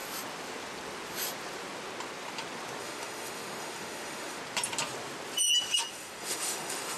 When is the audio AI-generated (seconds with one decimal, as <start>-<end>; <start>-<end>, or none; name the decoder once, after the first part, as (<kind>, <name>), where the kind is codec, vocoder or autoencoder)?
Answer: 2.8-4.4 (autoencoder, DAC-VAE); 5.9-7.0